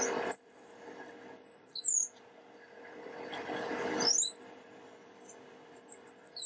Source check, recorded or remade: recorded